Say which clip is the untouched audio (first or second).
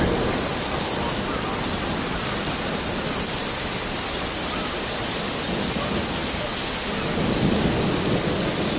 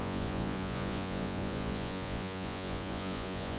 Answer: first